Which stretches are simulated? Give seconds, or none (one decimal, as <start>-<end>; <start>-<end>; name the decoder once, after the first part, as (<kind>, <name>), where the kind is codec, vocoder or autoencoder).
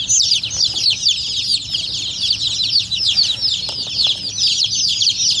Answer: none